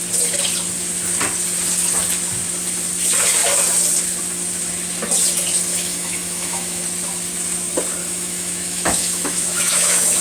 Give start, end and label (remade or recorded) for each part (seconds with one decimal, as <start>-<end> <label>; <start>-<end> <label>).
0.0-5.7 recorded; 5.7-6.8 remade; 6.8-8.0 recorded; 8.0-10.2 remade